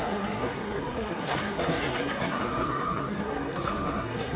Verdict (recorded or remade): remade